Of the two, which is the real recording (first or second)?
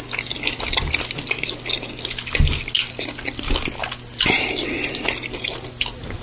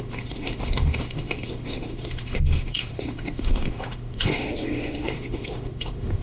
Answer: first